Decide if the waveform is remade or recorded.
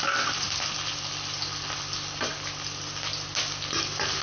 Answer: recorded